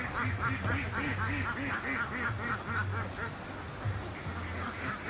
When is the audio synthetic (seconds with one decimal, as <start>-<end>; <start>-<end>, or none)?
none